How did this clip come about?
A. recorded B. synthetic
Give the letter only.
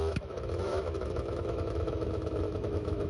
B